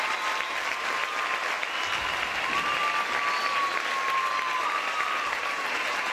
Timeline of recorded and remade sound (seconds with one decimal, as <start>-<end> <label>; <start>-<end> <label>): 0.0-1.0 remade; 1.0-4.7 recorded; 4.7-6.1 remade